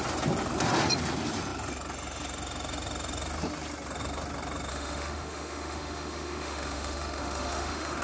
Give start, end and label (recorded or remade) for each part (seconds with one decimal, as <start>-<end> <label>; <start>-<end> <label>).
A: 0.0-4.7 recorded; 4.7-8.0 remade